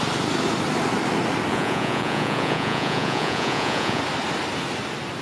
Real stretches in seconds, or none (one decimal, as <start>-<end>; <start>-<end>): 0.0-1.5; 4.0-5.2